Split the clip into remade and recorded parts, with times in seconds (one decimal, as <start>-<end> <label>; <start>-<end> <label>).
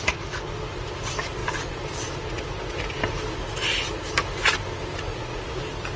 0.0-5.1 recorded; 5.1-5.6 remade; 5.6-6.0 recorded